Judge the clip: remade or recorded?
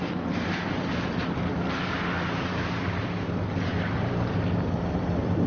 remade